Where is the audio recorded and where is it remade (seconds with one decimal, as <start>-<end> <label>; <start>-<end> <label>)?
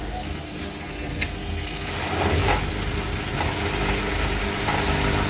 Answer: 0.0-1.9 remade; 1.9-5.3 recorded